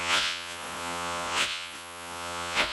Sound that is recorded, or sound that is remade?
remade